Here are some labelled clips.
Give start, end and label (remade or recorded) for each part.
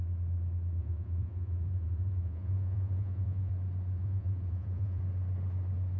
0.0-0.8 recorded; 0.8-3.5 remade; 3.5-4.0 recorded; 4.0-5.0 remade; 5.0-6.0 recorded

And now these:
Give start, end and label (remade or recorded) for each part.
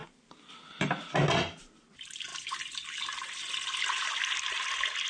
0.0-5.1 recorded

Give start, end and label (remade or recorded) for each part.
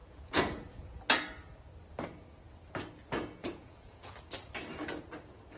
0.0-1.0 remade; 1.0-3.4 recorded; 3.4-4.1 remade; 4.1-5.6 recorded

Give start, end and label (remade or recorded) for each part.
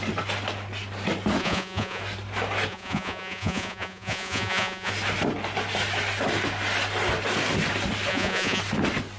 0.0-1.4 recorded; 1.4-2.0 remade; 2.0-2.7 recorded; 2.7-4.9 remade; 4.9-8.1 recorded; 8.1-8.6 remade; 8.6-9.2 recorded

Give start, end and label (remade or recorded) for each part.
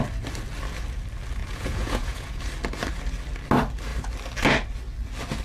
0.0-1.4 recorded; 1.4-2.4 remade; 2.4-5.4 recorded